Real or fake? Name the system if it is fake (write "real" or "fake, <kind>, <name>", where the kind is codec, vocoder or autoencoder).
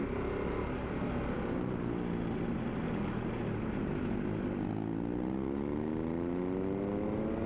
real